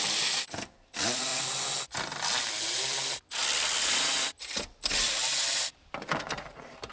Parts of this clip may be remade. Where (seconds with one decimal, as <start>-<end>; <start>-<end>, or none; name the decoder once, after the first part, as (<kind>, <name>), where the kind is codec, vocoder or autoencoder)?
0.0-1.3 (vocoder, BigVGAN v2); 2.0-6.9

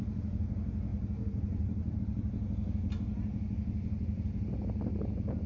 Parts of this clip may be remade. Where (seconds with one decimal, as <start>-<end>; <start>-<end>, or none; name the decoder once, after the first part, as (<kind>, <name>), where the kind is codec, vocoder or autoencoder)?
0.9-2.0 (vocoder, BigVGAN v2)

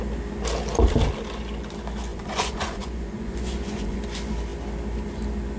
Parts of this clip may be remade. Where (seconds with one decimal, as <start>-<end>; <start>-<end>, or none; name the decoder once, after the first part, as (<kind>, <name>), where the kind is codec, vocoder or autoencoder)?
2.1-4.0 (vocoder, Vocos)

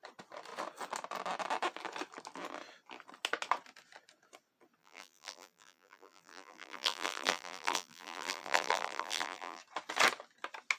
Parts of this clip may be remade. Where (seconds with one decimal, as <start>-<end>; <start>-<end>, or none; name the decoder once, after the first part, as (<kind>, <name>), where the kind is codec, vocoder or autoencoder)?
4.8-9.6 (vocoder, BigVGAN v2)

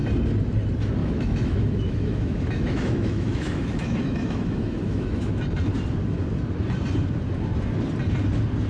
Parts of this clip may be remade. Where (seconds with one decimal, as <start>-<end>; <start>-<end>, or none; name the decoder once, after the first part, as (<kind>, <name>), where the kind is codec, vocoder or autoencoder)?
1.0-5.4 (autoencoder, DAC-VAE)

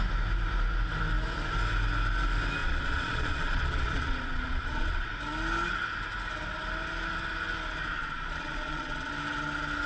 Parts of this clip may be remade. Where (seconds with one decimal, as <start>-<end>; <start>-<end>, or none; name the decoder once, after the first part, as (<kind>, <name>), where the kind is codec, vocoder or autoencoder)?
2.6-5.1 (vocoder, Vocos); 8.0-9.1

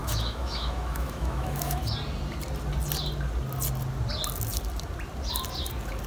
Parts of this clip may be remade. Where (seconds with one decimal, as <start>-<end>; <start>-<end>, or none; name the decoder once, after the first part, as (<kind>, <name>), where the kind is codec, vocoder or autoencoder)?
0.0-1.8 (autoencoder, DAC-VAE)

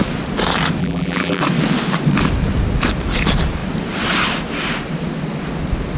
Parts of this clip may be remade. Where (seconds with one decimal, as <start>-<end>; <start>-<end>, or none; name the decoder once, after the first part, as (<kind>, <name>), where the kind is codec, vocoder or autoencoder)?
0.8-1.4 (vocoder, BigVGAN v2)